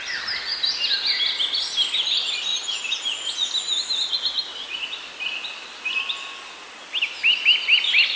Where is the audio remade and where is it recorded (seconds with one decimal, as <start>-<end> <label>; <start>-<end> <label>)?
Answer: 0.0-2.5 recorded; 2.5-3.5 remade; 3.5-8.2 recorded